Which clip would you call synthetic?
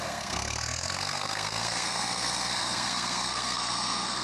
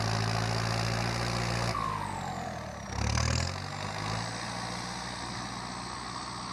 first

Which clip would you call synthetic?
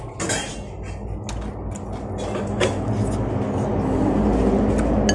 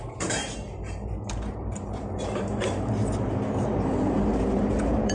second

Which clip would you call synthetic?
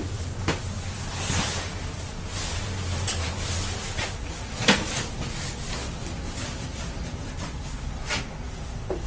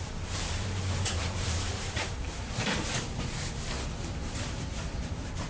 second